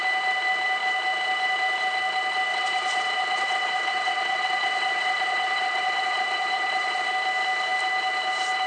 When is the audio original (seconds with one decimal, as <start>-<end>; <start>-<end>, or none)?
0.0-2.5; 7.1-8.7